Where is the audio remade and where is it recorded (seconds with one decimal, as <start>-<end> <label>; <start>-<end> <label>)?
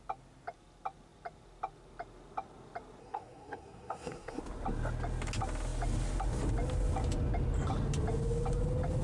0.0-3.0 recorded; 3.0-4.4 remade; 4.4-9.0 recorded